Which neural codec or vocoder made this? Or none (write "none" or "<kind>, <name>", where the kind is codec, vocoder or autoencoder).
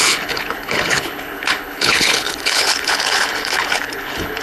codec, HILCodec